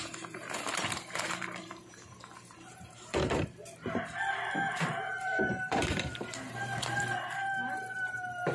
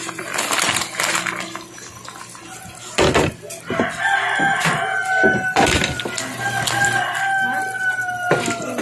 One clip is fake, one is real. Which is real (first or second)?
second